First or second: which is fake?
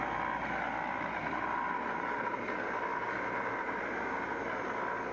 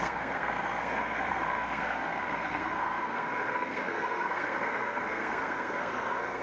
second